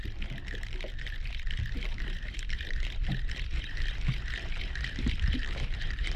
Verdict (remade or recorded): recorded